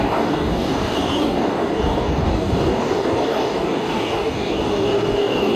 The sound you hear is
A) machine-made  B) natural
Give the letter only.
A